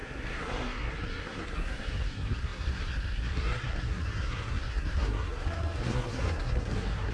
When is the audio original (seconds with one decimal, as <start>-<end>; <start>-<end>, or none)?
none